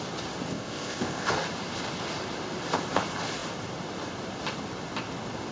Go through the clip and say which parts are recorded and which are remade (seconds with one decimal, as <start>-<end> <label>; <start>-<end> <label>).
0.0-0.5 recorded; 0.5-1.3 remade; 1.3-5.5 recorded